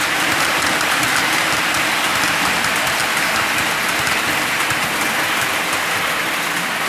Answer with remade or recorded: recorded